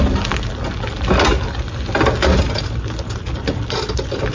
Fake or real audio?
real